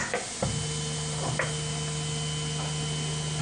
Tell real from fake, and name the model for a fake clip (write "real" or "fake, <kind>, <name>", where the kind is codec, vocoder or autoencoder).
real